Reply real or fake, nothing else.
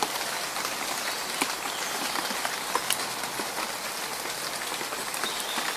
real